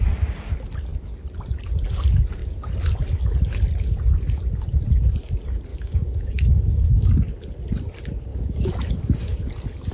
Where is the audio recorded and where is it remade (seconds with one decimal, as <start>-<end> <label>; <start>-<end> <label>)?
0.0-5.7 recorded; 5.7-7.1 remade; 7.1-8.3 recorded; 8.3-9.0 remade; 9.0-9.9 recorded

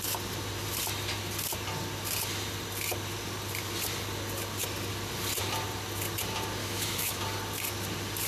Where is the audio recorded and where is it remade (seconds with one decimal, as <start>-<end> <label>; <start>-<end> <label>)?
0.0-6.6 recorded; 6.6-7.2 remade; 7.2-8.3 recorded

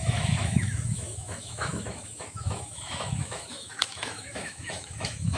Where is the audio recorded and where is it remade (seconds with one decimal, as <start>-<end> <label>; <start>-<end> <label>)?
0.0-5.4 remade

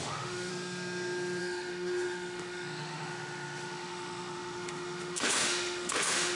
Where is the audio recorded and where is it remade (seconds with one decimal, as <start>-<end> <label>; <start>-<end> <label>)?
0.0-0.5 remade; 0.5-1.4 recorded; 1.4-6.3 remade

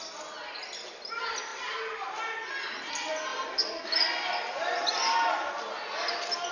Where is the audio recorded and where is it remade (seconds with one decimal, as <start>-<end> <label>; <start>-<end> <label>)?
0.0-6.5 recorded

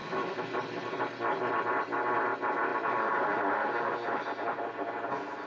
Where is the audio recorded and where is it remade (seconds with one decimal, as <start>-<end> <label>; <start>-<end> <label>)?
0.0-0.5 remade; 0.5-5.5 recorded

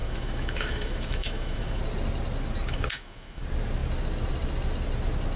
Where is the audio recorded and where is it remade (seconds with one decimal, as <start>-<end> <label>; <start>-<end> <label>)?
0.0-1.8 remade; 1.8-2.7 recorded; 2.7-3.4 remade; 3.4-5.4 recorded

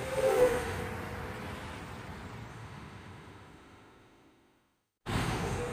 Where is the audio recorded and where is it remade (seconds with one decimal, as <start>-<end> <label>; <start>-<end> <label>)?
0.0-0.8 remade; 0.8-2.5 recorded; 2.5-5.7 remade